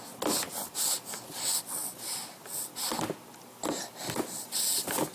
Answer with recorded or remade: recorded